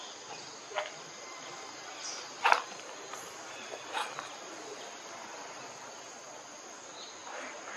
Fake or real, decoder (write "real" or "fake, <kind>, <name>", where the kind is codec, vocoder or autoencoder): real